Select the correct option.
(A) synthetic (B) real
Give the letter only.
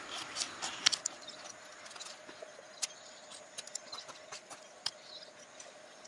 B